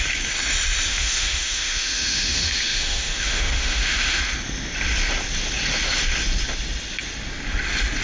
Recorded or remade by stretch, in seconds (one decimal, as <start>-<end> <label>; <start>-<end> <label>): 0.0-0.9 recorded; 0.9-4.2 remade; 4.2-8.0 recorded